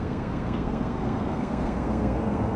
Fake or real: fake